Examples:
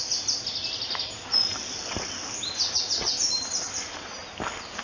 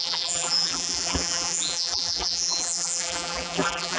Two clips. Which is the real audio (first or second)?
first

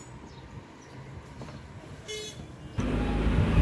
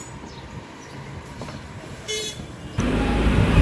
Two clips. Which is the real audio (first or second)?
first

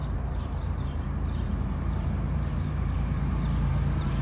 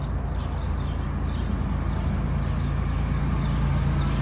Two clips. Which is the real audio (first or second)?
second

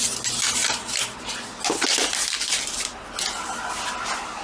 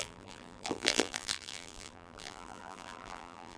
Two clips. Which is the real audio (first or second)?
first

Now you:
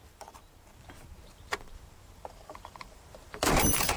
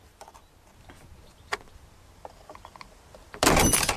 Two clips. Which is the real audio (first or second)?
second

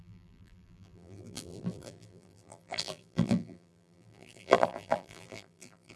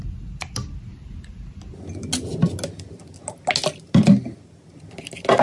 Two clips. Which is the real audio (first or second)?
second